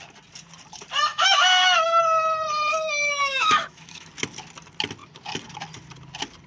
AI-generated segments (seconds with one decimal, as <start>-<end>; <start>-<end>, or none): 1.1-2.0; 2.7-4.1